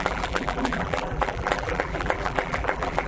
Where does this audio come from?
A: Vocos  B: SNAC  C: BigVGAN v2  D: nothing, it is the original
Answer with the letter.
C